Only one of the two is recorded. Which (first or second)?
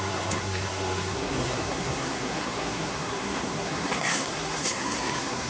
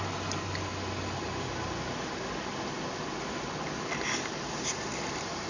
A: second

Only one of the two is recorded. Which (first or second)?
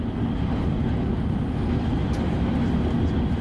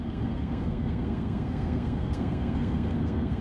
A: first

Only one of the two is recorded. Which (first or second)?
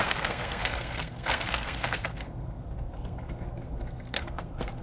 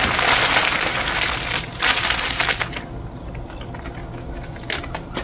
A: second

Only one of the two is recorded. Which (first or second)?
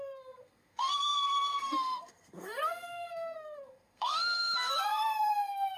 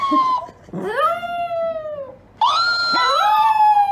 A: second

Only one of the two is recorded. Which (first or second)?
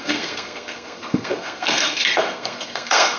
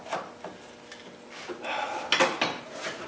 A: second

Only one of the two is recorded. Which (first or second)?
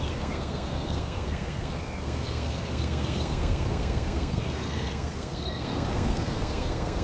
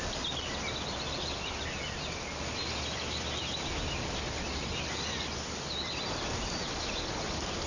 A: second